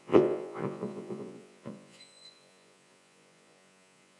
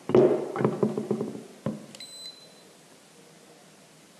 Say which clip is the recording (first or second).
second